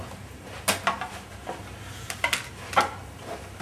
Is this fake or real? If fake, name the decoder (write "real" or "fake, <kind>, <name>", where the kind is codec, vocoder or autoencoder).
real